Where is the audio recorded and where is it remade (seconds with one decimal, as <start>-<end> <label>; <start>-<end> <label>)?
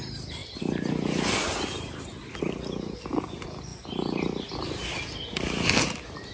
0.0-6.3 recorded